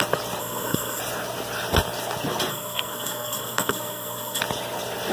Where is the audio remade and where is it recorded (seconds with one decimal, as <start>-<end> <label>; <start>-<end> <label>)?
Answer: 0.0-0.4 recorded; 0.4-1.0 remade; 1.0-2.5 recorded; 2.5-4.4 remade; 4.4-5.1 recorded